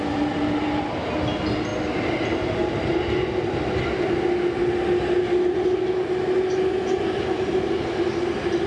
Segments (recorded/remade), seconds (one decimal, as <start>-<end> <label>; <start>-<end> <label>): 0.0-8.7 recorded